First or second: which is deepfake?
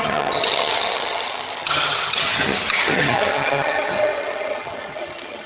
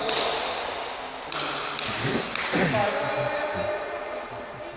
first